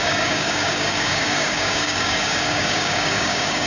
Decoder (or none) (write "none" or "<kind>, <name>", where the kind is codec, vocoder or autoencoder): codec, DAC